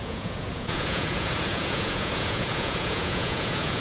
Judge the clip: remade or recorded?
remade